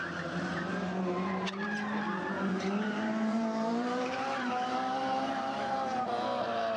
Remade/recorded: remade